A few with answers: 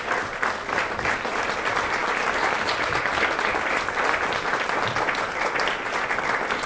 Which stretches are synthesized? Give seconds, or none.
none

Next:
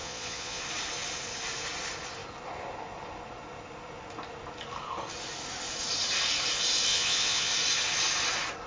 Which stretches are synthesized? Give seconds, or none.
0.0-0.6 (vocoder, Vocos); 6.9-7.5

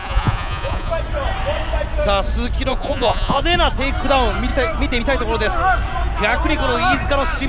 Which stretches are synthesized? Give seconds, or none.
0.0-0.9 (vocoder, Vocos); 2.7-3.4

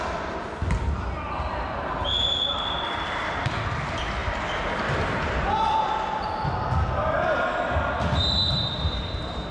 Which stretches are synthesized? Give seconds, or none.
none

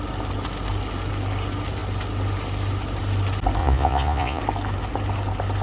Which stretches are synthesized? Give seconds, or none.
3.6-4.4 (vocoder, Vocos)

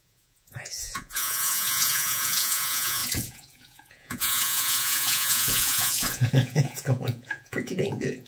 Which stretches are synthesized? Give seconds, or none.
0.0-8.3 (vocoder, Vocos)

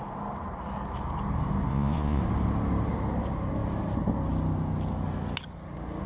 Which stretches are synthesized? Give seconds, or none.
1.7-2.2 (vocoder, Vocos)

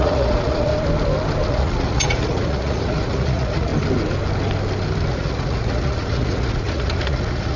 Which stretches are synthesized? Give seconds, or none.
0.0-0.7 (vocoder, Vocos); 1.5-3.7; 5.1-7.6